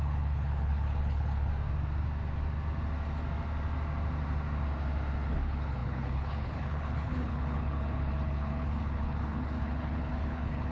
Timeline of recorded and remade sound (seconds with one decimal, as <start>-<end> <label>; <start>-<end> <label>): 0.0-1.5 remade; 1.5-5.3 recorded; 5.3-10.7 remade